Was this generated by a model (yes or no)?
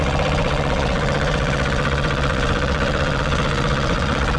yes